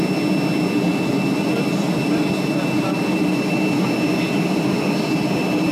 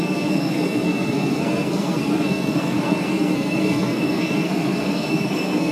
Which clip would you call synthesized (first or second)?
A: second